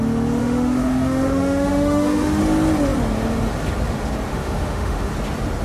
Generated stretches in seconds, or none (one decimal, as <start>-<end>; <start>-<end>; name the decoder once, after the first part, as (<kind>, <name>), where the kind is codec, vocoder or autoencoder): 0.4-2.4 (autoencoder, DAC-VAE); 4.3-5.1